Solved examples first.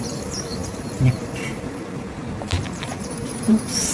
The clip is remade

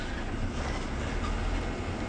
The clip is recorded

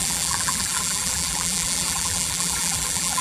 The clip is remade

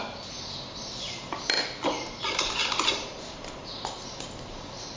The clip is recorded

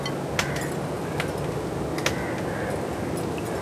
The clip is recorded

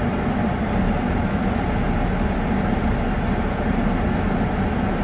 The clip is recorded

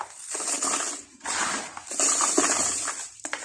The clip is recorded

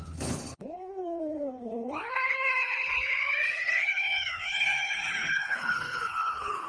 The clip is remade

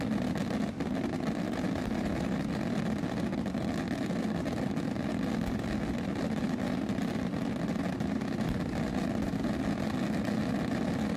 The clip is recorded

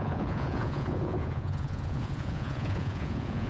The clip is remade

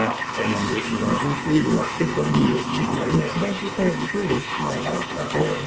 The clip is remade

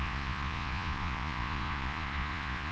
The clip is remade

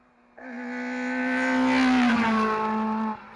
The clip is recorded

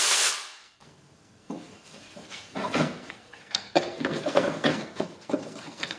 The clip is remade